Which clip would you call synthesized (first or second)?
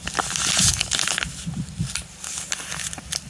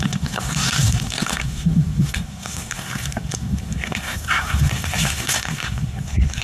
second